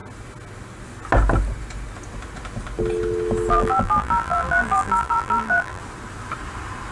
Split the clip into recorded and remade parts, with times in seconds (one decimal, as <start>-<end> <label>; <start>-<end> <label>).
0.0-3.5 recorded; 3.5-5.8 remade; 5.8-6.9 recorded